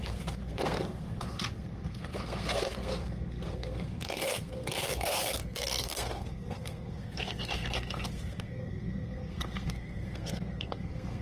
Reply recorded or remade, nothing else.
remade